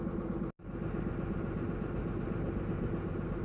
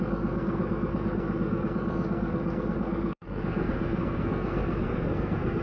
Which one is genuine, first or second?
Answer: first